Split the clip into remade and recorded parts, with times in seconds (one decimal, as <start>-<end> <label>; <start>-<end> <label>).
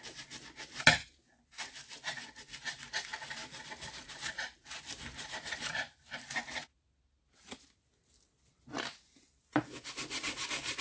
0.0-10.8 recorded